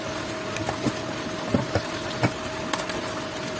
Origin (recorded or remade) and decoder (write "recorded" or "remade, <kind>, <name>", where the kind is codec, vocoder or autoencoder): recorded